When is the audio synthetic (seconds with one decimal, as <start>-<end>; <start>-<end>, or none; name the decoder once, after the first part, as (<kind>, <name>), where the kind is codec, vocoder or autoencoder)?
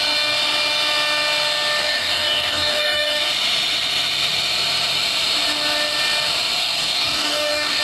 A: 1.8-3.3 (codec, DAC); 6.6-7.8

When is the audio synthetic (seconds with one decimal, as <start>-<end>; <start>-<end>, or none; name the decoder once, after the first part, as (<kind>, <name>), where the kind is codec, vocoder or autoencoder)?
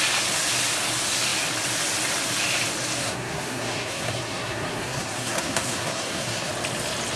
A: 3.0-6.5 (codec, SNAC)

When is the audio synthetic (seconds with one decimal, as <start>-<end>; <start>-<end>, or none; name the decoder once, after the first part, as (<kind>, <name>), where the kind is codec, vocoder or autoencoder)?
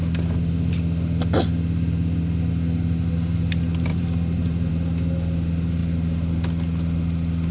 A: 3.9-4.7 (vocoder, BigVGAN v2)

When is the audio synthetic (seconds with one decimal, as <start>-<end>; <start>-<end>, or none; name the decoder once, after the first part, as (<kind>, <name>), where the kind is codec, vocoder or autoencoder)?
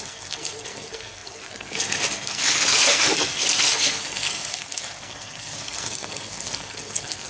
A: 0.0-7.3 (codec, SNAC)